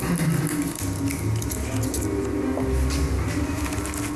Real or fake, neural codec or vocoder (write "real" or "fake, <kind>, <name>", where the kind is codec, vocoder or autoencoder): real